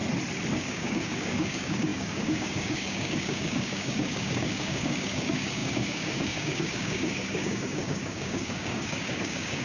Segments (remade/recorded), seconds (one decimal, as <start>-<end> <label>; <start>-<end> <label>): 0.0-0.5 recorded; 0.5-9.6 remade